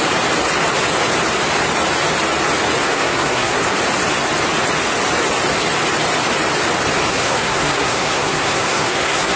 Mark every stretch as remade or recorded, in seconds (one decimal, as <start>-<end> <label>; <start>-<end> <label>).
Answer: 0.0-2.8 recorded; 2.8-3.8 remade; 3.8-7.1 recorded; 7.1-9.4 remade